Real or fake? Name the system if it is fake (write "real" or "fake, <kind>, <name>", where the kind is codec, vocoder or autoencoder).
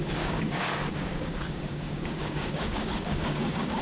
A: fake, codec, DAC